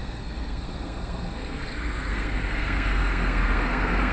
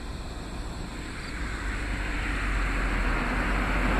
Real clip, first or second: second